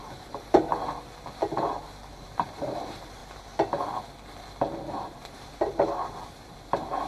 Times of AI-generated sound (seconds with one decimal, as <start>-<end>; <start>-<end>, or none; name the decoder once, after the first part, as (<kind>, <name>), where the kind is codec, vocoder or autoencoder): 0.0-0.7 (vocoder, BigVGAN v2); 2.1-3.2; 4.9-7.1

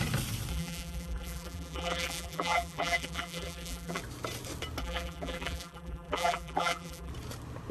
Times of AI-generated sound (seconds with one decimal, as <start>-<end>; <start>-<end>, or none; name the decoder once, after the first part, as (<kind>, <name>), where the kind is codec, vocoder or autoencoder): 0.5-4.0 (vocoder, BigVGAN v2); 4.8-7.1

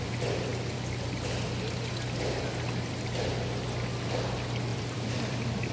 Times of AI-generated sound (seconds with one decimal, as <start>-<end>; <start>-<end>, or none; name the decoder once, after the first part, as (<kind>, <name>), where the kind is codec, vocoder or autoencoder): 4.7-5.7 (vocoder, BigVGAN v2)